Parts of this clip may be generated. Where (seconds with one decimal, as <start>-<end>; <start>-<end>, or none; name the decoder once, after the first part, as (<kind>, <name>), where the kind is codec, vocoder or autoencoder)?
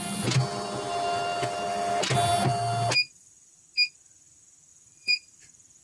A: 4.7-5.8 (vocoder, BigVGAN v2)